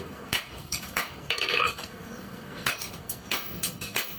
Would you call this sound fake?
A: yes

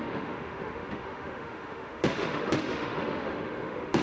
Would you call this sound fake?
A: yes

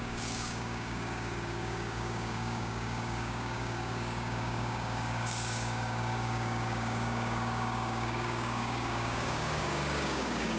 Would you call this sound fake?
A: yes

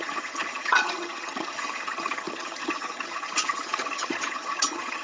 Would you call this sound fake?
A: yes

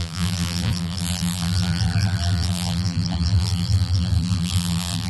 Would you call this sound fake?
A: yes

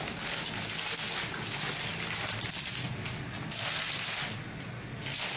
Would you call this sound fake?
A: no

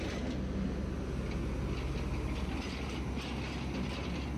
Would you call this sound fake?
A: no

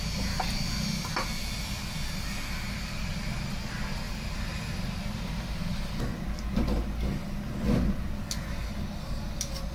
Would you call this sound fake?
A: no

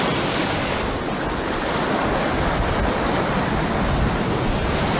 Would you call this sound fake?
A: no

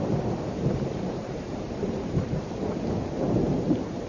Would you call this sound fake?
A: yes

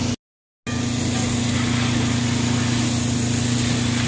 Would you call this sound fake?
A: no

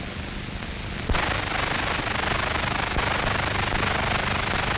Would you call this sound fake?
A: no